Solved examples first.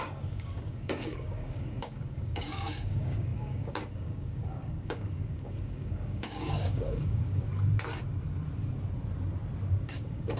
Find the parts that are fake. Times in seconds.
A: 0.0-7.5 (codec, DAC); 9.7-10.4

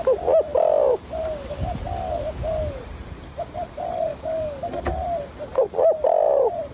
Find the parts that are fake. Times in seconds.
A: 4.1-4.9 (codec, DAC)

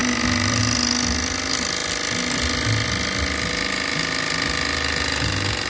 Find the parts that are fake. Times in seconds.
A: none

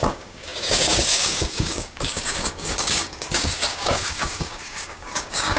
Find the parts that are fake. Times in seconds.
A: 0.0-5.6 (codec, DAC)